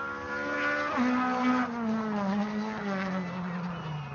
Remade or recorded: recorded